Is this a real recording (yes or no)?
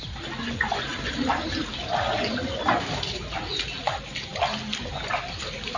yes